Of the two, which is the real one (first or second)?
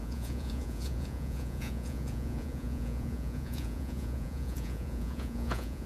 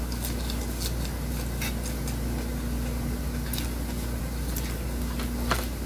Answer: second